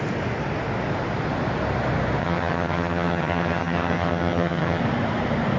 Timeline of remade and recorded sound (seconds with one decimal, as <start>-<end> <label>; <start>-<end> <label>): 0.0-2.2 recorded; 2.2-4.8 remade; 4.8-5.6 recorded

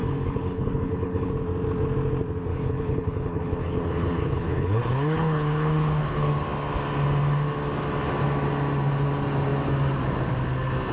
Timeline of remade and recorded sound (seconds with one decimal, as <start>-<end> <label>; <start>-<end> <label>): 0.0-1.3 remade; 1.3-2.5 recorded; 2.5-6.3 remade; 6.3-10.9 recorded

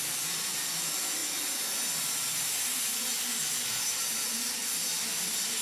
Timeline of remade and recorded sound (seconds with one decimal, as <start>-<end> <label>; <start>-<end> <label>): 0.0-5.6 recorded

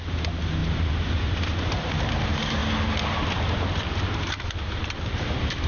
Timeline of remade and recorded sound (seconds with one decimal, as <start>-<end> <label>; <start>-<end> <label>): 0.0-2.6 remade; 2.6-4.0 recorded; 4.0-5.7 remade

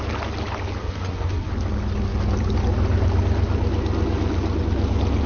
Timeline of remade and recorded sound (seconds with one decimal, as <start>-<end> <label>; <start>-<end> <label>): 0.0-0.8 recorded; 0.8-1.5 remade; 1.5-5.3 recorded